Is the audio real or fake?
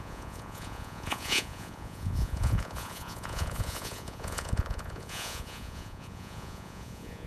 fake